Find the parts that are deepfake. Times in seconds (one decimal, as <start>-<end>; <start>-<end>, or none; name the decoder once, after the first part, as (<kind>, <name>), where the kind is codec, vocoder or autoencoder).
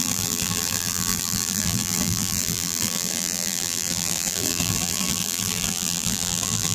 0.0-6.7 (vocoder, BigVGAN v2)